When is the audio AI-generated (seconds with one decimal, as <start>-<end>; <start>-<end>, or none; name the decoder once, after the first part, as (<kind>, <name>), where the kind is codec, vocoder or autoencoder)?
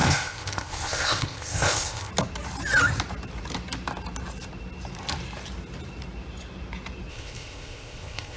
0.0-2.1 (codec, ZipCodec); 7.1-8.4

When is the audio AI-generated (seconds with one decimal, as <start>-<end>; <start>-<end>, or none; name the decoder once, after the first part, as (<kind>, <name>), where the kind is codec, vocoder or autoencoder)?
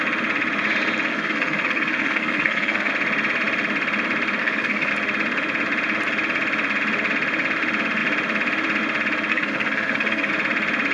1.1-2.9 (codec, SNAC); 4.4-4.9; 9.3-10.3